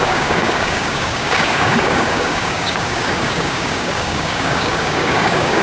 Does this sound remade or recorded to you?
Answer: remade